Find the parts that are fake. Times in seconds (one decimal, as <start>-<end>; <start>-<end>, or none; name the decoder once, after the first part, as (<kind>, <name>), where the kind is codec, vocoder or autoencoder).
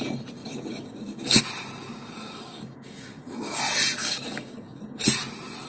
0.4-1.4 (codec, DAC); 1.9-3.6; 4.0-4.8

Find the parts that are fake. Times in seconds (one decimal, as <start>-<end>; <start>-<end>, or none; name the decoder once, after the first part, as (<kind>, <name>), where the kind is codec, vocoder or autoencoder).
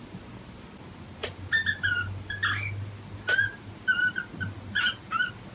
none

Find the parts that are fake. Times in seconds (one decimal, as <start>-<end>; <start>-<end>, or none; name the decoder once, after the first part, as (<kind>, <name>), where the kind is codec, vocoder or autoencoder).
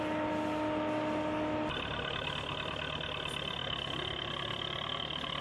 none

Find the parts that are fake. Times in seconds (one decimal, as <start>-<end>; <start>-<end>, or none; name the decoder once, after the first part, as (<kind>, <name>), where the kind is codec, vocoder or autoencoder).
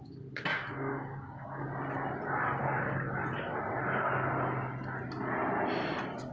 0.5-1.6 (codec, DAC); 2.6-3.1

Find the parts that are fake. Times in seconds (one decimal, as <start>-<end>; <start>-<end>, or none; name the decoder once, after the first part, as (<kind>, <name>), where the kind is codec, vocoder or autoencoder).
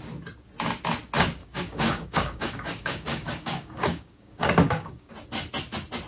1.4-5.1 (codec, DAC)